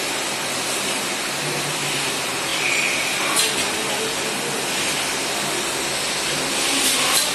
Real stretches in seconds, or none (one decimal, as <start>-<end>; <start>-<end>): 0.0-7.3